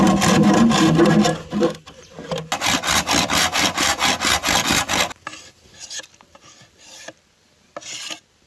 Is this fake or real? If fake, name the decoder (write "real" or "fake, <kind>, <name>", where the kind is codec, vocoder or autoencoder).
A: real